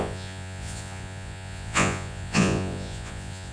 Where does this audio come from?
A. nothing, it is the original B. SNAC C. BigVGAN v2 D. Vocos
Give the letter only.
D